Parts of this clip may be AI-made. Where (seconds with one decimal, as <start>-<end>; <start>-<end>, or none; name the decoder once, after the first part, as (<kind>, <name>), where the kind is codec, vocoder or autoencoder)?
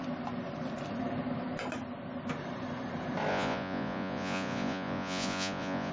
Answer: 3.3-5.9 (vocoder, Vocos)